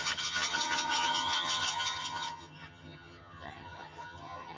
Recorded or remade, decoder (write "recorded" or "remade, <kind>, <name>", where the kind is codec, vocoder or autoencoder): remade, vocoder, HiFi-GAN